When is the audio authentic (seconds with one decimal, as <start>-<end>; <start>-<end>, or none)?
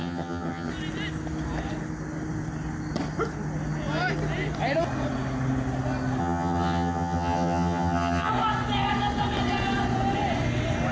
0.7-6.2; 8.3-10.9